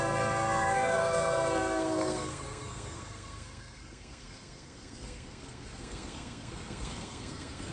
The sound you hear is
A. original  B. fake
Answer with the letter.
B